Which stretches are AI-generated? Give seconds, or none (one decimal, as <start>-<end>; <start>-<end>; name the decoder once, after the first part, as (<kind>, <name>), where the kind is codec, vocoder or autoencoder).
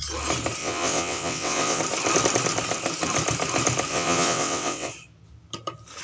0.6-1.8 (vocoder, WaveNeXt); 3.9-4.9